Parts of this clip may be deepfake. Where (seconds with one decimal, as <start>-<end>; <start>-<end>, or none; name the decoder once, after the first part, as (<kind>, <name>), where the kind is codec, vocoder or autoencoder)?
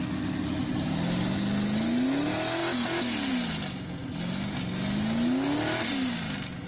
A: none